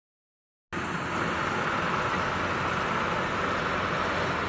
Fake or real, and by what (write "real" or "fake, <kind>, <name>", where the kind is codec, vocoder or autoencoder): real